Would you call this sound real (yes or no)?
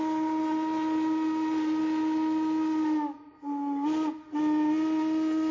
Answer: yes